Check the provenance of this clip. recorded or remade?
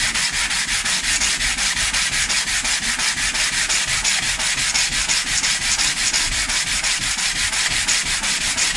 recorded